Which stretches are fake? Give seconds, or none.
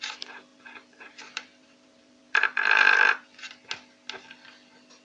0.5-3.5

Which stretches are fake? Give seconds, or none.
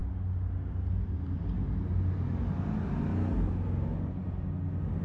none